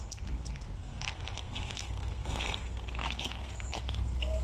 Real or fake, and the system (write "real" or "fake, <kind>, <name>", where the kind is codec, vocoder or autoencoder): fake, codec, SNAC